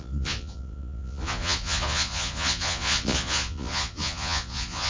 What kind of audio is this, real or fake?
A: fake